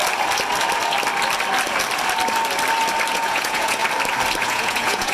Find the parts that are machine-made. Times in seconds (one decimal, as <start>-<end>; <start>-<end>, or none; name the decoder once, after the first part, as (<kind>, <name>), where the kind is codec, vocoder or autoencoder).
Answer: 3.1-3.8 (vocoder, Vocos); 4.4-5.1